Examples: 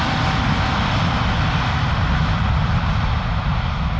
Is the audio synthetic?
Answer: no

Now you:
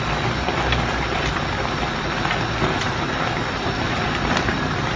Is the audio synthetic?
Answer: no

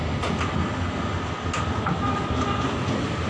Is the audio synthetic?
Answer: no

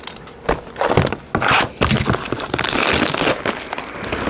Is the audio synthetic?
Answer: no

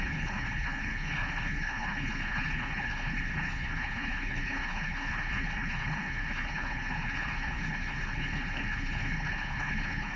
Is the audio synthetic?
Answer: yes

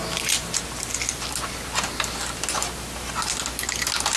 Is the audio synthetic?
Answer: no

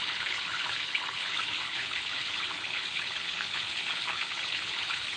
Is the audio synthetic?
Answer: yes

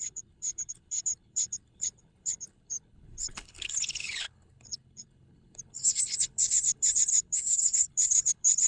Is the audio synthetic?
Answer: yes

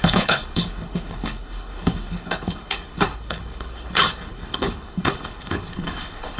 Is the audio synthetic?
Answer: yes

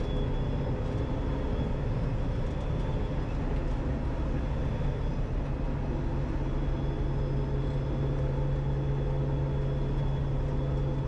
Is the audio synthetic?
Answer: no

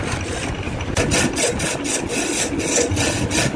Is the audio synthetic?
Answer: no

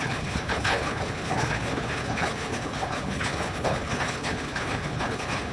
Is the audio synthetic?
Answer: yes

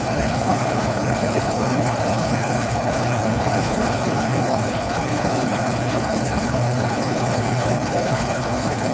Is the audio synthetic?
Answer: yes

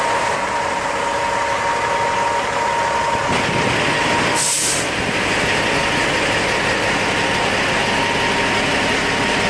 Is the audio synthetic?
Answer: no